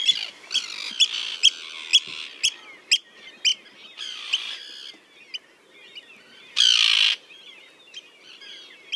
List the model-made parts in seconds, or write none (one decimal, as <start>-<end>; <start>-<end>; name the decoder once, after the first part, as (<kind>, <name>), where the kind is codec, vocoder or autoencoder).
none